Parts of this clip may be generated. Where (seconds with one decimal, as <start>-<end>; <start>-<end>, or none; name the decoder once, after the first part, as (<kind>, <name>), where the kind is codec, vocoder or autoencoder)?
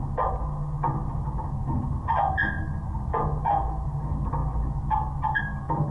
none